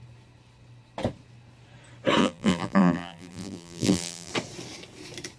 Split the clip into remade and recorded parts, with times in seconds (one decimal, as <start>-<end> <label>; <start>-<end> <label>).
0.0-2.2 recorded; 2.2-4.3 remade; 4.3-5.4 recorded